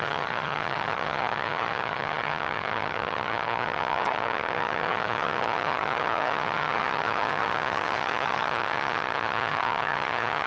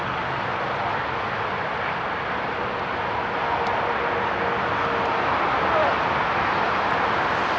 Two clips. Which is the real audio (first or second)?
second